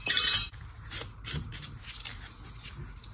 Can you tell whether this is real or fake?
fake